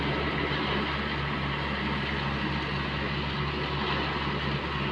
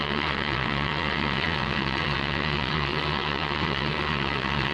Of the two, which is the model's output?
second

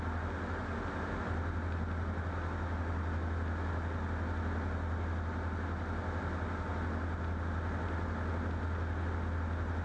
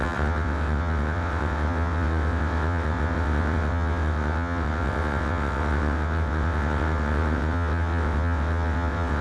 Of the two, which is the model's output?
second